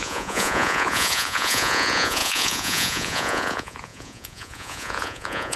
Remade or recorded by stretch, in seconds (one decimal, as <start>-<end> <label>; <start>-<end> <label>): 0.0-5.6 remade